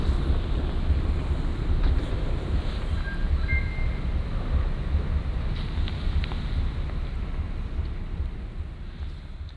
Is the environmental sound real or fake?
real